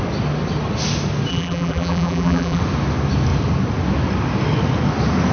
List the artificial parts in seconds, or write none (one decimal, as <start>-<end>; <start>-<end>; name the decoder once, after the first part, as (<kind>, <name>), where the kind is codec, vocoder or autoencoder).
1.3-2.6 (vocoder, BigVGAN v2)